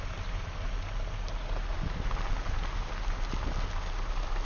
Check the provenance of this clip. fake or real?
real